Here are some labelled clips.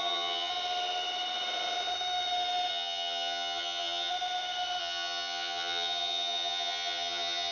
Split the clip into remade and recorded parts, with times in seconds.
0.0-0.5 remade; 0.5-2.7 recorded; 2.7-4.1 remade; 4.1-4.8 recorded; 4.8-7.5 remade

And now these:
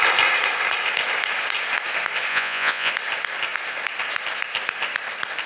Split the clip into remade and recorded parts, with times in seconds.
0.0-2.3 recorded; 2.3-2.9 remade; 2.9-5.5 recorded

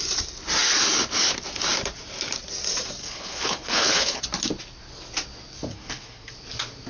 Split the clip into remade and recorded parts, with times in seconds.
0.0-3.0 recorded; 3.0-4.2 remade; 4.2-5.7 recorded; 5.7-6.3 remade; 6.3-6.9 recorded

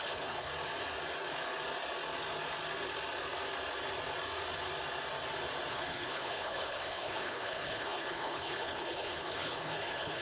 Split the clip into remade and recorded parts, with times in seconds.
0.0-0.5 remade; 0.5-5.7 recorded; 5.7-10.2 remade

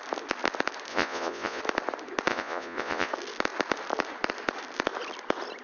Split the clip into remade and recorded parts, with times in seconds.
0.0-0.9 recorded; 0.9-1.6 remade; 1.6-2.3 recorded; 2.3-3.1 remade; 3.1-5.6 recorded

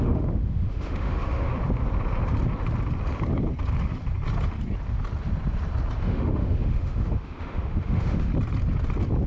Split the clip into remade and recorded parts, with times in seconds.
0.0-1.5 remade; 1.5-6.0 recorded; 6.0-8.3 remade; 8.3-9.3 recorded

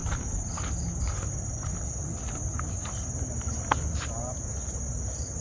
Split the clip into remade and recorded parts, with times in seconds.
0.0-5.4 recorded